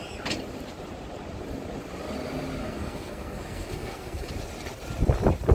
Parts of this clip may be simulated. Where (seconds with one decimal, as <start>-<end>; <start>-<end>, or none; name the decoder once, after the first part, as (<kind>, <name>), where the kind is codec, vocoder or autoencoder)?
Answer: 2.6-4.3 (codec, SNAC)